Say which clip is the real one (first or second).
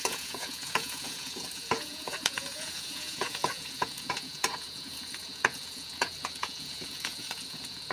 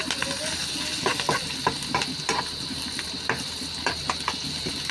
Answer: second